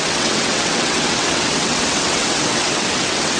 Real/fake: fake